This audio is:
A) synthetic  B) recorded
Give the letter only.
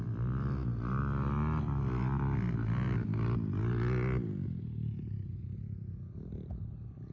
B